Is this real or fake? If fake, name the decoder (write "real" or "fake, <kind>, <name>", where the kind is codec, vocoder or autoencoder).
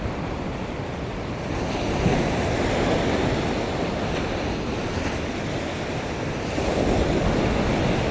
real